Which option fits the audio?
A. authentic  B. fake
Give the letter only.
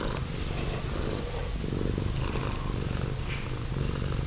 A